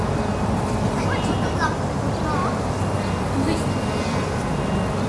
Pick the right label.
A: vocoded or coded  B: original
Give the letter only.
B